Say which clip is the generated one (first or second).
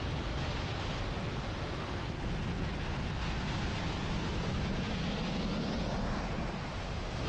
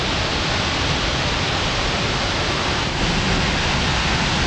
second